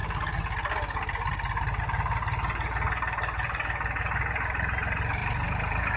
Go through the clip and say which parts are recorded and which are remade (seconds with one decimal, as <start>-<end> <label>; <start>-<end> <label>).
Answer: 0.0-5.2 recorded; 5.2-6.0 remade